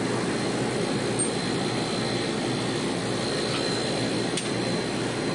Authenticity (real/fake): real